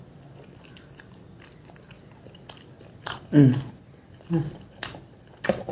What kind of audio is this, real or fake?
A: real